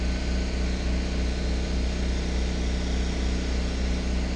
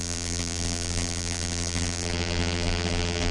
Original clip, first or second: first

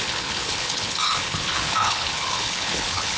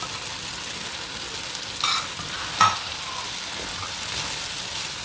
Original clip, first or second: second